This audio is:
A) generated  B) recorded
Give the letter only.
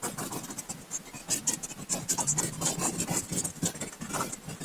B